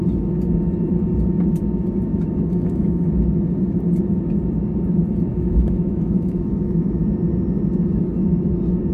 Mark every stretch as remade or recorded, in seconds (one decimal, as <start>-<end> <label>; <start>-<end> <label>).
0.0-2.1 recorded; 2.1-3.1 remade; 3.1-5.3 recorded; 5.3-7.0 remade; 7.0-8.9 recorded